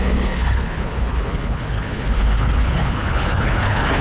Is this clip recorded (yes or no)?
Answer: no